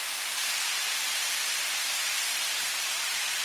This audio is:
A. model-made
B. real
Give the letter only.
B